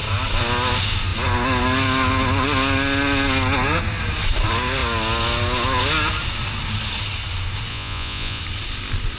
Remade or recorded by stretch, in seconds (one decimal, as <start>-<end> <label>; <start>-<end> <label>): 0.0-7.7 recorded; 7.7-8.4 remade; 8.4-9.2 recorded